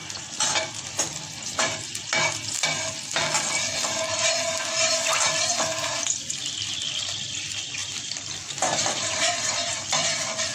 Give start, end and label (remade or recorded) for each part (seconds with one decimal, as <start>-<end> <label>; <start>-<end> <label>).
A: 0.0-1.9 remade; 1.9-7.8 recorded; 7.8-10.5 remade